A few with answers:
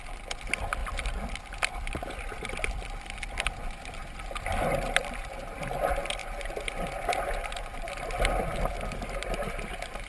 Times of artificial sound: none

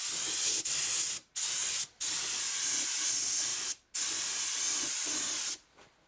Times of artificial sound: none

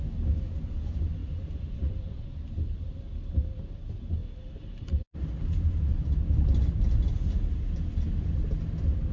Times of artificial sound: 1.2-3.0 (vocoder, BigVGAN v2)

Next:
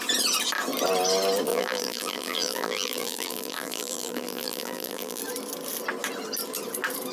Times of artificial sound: 1.5-5.2 (vocoder, BigVGAN v2)

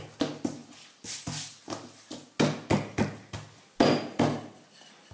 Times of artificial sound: none

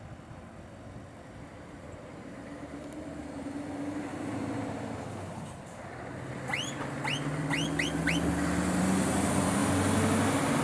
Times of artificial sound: 1.5-3.2 (vocoder, BigVGAN v2); 4.1-6.1